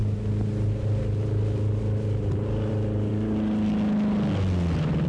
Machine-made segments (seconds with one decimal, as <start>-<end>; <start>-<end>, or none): none